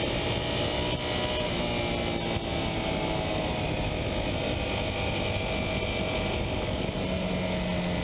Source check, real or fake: real